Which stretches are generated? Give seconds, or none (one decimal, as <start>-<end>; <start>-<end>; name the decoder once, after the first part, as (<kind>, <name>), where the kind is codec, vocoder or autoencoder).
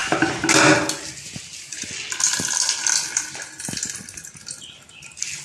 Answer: none